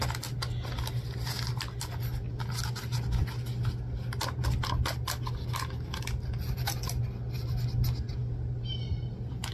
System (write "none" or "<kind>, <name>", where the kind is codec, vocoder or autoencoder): none